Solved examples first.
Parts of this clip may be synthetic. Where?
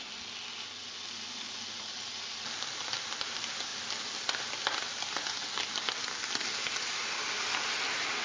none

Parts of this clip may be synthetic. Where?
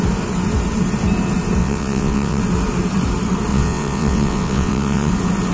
1.6-2.4 (vocoder, WaveNeXt); 3.5-5.1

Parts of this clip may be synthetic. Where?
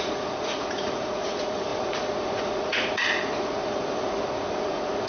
0.0-5.1 (vocoder, Vocos)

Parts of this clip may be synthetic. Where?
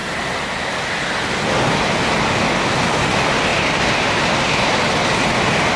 none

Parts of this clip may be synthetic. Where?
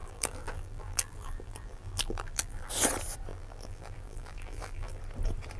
0.0-2.7 (vocoder, BigVGAN v2); 3.3-5.0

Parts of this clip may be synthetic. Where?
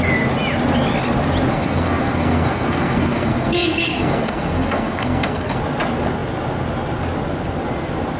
1.5-5.6 (codec, SNAC)